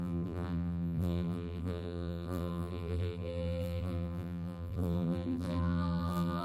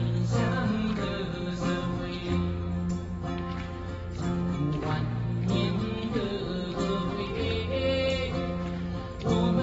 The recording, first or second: second